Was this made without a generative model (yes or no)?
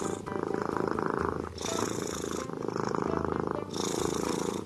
yes